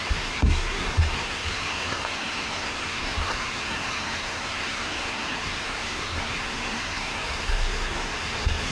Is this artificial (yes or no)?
yes